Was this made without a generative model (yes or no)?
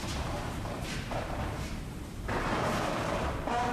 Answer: no